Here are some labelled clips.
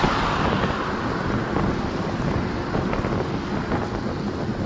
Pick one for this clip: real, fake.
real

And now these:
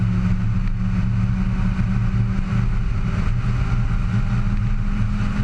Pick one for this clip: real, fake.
real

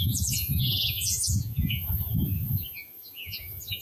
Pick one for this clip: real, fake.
fake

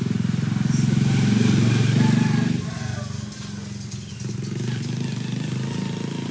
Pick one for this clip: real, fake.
real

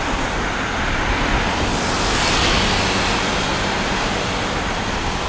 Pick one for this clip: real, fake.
real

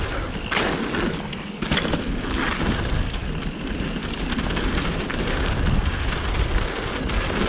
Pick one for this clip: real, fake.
real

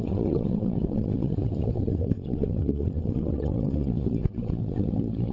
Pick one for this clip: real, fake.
fake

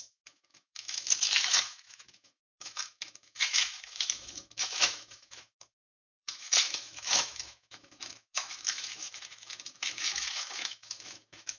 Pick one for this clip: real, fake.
fake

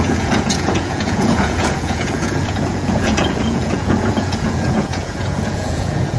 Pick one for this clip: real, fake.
fake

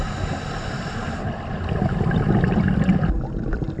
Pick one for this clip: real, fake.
real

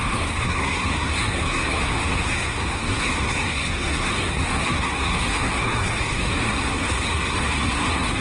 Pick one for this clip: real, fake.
fake